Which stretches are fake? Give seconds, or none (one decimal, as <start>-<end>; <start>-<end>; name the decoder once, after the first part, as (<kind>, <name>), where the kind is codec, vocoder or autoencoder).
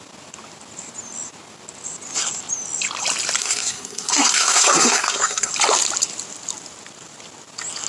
3.4-5.5 (codec, SNAC)